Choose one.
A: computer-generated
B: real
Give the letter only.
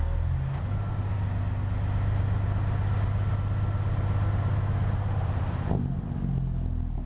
B